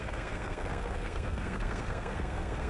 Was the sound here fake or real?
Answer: fake